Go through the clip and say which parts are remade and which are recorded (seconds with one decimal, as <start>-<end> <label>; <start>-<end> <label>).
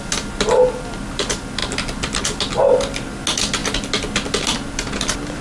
0.0-5.4 recorded